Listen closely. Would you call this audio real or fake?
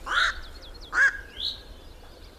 real